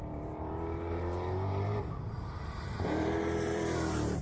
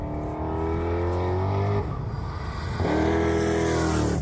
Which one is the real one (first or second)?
second